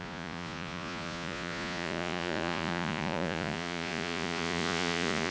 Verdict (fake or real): fake